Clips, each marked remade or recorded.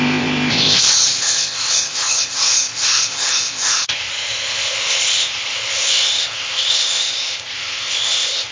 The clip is remade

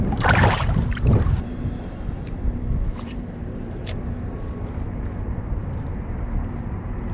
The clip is remade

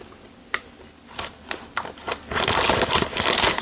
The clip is recorded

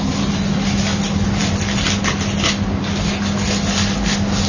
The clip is recorded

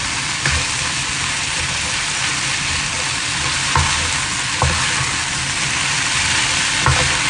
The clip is recorded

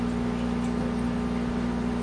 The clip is recorded